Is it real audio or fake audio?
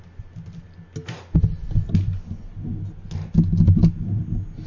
real